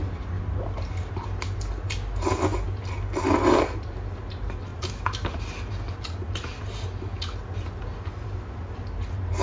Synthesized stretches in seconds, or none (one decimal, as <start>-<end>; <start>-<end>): none